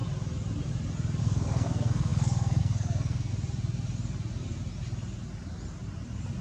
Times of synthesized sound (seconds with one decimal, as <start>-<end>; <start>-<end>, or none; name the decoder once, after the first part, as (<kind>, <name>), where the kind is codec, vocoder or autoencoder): 1.2-3.3 (codec, SNAC)